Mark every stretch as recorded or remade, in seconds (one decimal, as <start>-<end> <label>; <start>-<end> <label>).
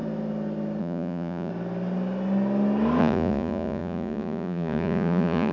0.0-0.8 recorded; 0.8-1.5 remade; 1.5-3.0 recorded; 3.0-5.5 remade